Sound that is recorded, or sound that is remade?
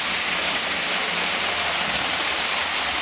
recorded